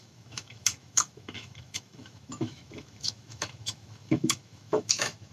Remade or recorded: remade